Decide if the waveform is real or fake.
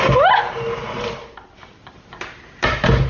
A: real